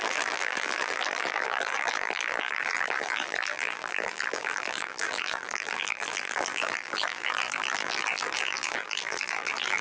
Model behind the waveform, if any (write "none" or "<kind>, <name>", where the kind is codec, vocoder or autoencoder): vocoder, BigVGAN v2